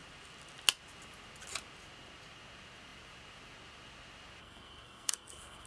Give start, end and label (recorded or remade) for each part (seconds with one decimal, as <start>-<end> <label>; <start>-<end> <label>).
0.0-4.4 recorded; 4.4-5.7 remade